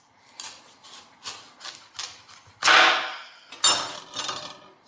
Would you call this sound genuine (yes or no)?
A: yes